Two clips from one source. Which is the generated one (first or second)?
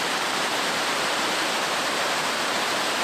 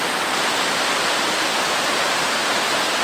first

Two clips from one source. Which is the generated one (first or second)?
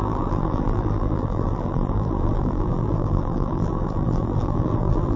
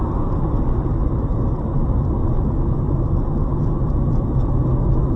first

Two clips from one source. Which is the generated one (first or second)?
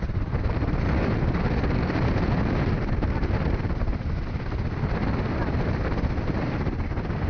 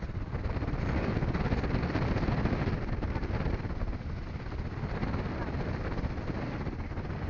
first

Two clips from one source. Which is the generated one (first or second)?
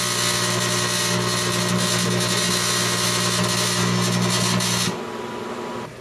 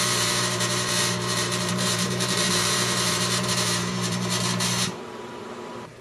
second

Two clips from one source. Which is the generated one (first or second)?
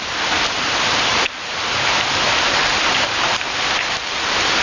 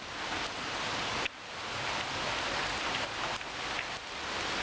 first